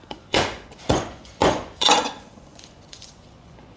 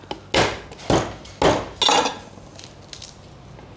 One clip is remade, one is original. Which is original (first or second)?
second